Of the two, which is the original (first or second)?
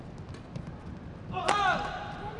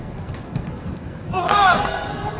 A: first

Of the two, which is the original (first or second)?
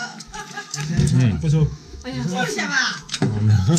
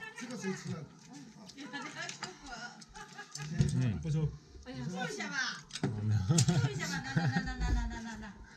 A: second